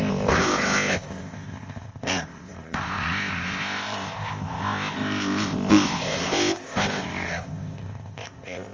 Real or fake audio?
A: fake